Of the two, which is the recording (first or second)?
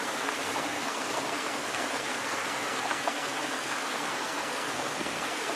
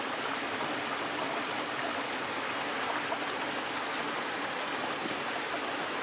second